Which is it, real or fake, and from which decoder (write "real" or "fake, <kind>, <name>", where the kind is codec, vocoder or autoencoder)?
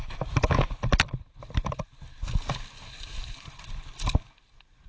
real